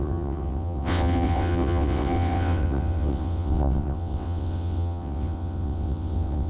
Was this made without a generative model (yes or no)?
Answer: no